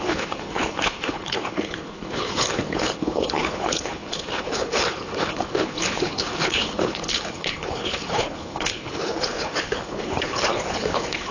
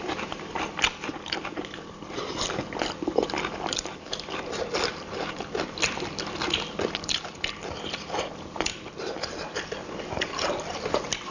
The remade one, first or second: first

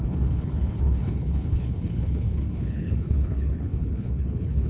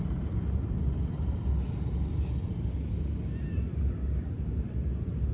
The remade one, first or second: first